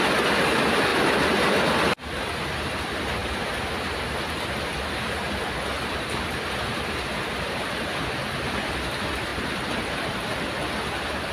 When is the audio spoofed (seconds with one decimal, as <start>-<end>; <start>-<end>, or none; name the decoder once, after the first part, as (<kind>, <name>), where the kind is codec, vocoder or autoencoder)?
0.9-1.8 (vocoder, BigVGAN v2); 9.3-10.4